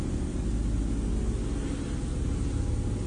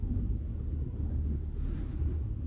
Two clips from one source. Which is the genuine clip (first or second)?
first